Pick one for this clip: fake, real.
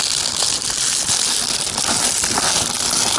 real